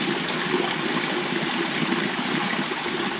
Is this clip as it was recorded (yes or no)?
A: yes